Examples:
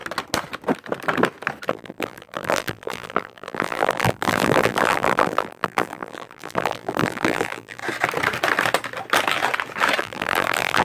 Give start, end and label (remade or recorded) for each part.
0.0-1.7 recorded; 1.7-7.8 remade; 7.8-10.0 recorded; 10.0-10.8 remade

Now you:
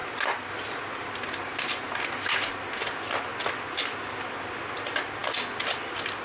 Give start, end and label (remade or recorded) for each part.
0.0-6.2 recorded

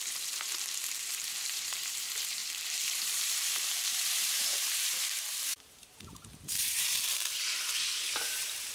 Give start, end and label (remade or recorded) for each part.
0.0-8.7 remade

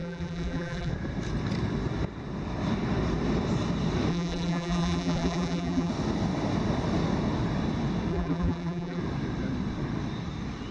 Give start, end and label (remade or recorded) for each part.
0.0-0.9 remade; 0.9-4.1 recorded; 4.1-5.9 remade; 5.9-8.1 recorded; 8.1-9.0 remade; 9.0-10.7 recorded

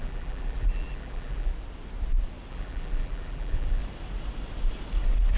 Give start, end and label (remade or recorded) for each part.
0.0-1.5 remade; 1.5-2.5 recorded; 2.5-3.8 remade; 3.8-5.4 recorded

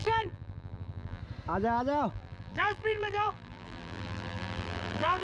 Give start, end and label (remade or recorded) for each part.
0.0-1.2 remade; 1.2-2.1 recorded; 2.1-5.2 remade

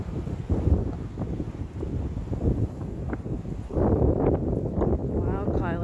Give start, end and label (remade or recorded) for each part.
0.0-5.0 remade; 5.0-5.8 recorded